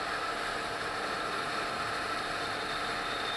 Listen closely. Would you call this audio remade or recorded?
recorded